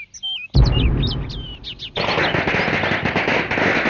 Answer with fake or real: real